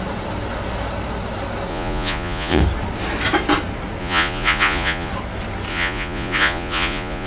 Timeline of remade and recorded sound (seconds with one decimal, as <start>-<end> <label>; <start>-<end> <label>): 0.0-1.7 recorded; 1.7-2.6 remade; 2.6-4.0 recorded; 4.0-5.1 remade; 5.1-5.7 recorded; 5.7-7.3 remade